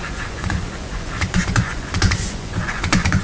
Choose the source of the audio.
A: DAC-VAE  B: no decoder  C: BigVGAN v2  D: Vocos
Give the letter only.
D